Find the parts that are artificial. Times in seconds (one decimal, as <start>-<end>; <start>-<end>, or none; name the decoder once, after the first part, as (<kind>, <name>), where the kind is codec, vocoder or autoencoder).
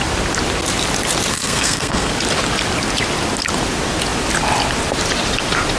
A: 1.3-2.1 (codec, SNAC)